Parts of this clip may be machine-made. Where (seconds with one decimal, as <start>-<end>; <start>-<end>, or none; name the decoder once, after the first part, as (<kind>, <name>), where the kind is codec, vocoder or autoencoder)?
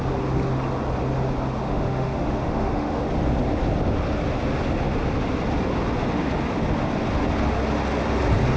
1.6-3.0 (autoencoder, DAC-VAE)